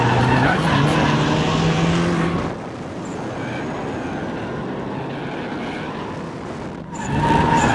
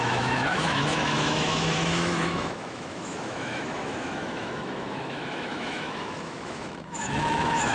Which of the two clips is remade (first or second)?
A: second